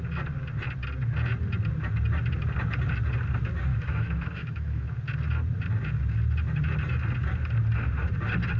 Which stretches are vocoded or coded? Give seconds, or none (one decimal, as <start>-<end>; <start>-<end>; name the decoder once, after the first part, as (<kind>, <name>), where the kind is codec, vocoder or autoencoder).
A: 3.7-4.9 (autoencoder, DAC-VAE)